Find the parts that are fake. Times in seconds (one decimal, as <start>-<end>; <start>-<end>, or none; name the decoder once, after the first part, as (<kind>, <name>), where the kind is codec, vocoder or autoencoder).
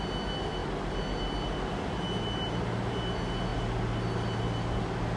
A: none